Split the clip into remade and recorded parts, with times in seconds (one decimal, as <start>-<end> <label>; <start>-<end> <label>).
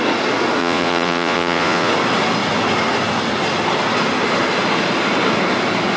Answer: 0.0-0.6 recorded; 0.6-1.9 remade; 1.9-6.0 recorded